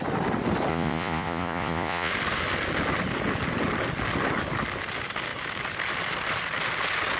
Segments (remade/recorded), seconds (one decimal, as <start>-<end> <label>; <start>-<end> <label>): 0.0-0.7 recorded; 0.7-2.1 remade; 2.1-7.2 recorded